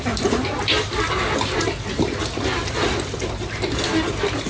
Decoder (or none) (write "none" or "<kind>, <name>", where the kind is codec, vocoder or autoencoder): none